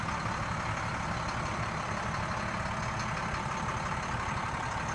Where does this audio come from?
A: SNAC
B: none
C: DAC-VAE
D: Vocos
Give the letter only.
B